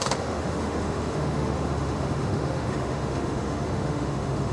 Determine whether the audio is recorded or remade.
remade